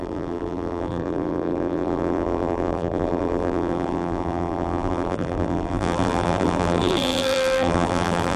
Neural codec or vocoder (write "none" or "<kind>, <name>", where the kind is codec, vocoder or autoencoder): vocoder, BigVGAN v2